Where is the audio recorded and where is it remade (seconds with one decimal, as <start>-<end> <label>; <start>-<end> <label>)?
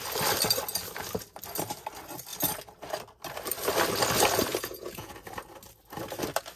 0.0-4.5 recorded; 4.5-5.1 remade; 5.1-6.6 recorded